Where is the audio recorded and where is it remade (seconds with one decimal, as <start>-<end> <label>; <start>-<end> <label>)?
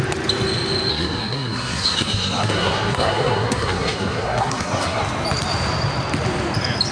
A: 0.0-0.9 recorded; 0.9-5.0 remade; 5.0-6.9 recorded